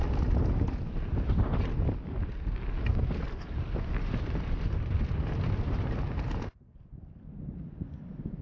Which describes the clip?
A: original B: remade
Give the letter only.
A